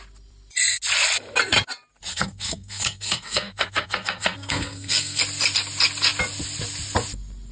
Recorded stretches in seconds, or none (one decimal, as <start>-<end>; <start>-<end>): 0.0-2.1; 5.2-7.5